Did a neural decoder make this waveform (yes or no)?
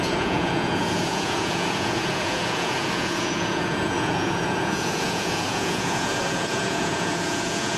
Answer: yes